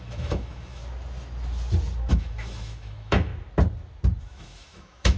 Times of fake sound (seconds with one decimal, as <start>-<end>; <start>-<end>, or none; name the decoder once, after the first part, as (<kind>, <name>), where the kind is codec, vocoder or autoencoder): 0.0-0.8 (autoencoder, DAC-VAE); 2.1-3.3; 4.2-5.2